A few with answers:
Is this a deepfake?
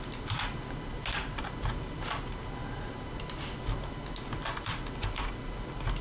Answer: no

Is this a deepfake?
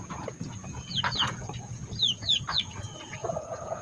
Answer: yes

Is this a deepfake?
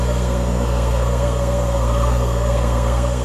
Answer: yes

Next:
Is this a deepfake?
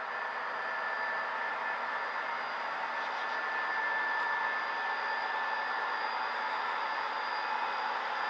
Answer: no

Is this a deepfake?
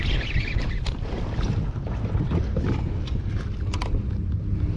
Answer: no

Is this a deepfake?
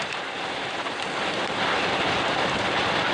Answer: no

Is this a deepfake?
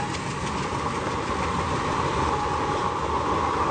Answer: no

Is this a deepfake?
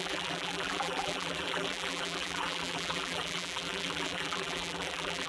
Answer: yes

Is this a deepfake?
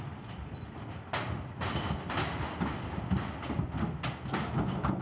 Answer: no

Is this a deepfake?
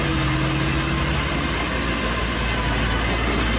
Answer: no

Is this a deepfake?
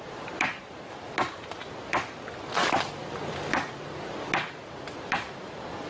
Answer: no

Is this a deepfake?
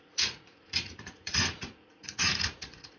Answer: yes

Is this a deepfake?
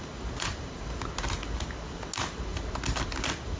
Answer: no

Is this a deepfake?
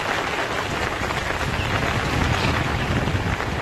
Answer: no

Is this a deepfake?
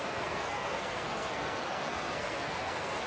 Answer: yes